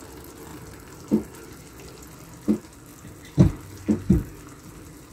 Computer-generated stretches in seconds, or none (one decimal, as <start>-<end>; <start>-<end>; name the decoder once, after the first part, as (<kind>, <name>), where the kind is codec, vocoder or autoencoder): 0.5-1.8 (vocoder, BigVGAN v2)